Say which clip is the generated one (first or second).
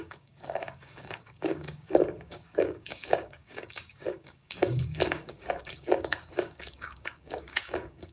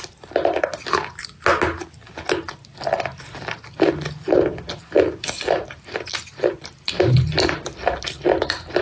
first